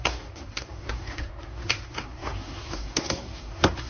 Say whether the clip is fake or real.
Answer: fake